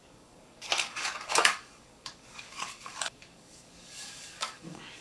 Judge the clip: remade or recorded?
remade